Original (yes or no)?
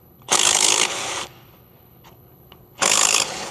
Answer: no